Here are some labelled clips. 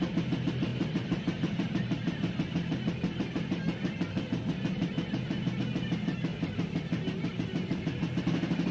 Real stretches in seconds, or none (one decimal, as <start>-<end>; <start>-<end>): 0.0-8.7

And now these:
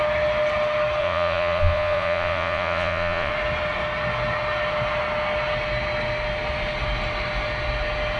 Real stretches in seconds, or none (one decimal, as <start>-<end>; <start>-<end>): 0.0-1.0; 3.3-8.2

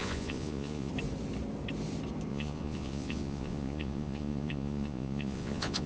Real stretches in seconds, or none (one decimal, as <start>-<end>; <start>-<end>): 0.9-2.3

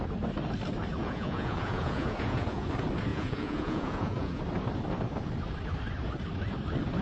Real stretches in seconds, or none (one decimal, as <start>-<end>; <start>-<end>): 0.0-1.0; 2.7-3.1; 4.4-7.0

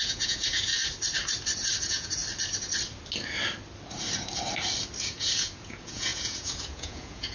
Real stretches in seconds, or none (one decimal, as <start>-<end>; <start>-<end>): 0.7-1.8; 2.2-5.0

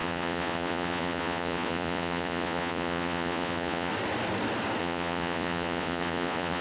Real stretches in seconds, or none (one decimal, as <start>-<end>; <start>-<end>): 3.9-4.8

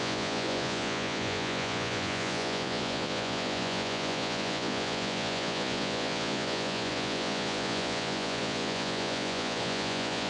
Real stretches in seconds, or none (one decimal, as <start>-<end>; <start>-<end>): none

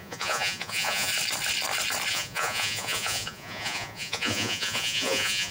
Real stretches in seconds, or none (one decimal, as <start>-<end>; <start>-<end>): 1.1-2.1